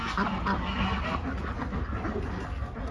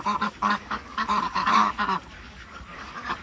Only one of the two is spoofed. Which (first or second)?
second